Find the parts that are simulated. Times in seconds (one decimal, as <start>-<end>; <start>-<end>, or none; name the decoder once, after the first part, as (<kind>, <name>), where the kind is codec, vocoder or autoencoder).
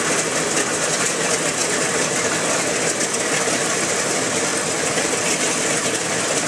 none